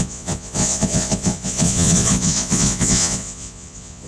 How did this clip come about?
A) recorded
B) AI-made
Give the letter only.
B